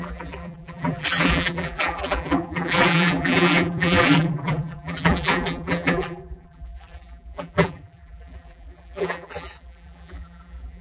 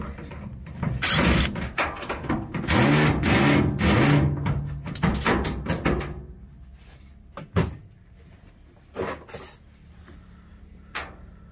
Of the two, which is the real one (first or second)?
second